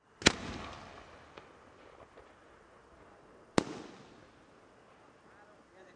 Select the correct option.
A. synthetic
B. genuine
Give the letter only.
B